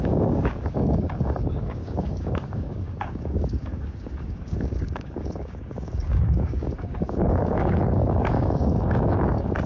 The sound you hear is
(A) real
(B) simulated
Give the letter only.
B